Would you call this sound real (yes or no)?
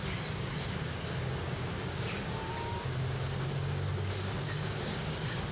no